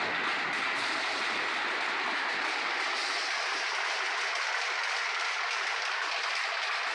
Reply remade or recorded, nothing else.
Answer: recorded